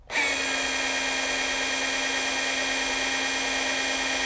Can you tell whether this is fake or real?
real